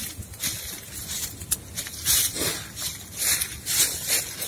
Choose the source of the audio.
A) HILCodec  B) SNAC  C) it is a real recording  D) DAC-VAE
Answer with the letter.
C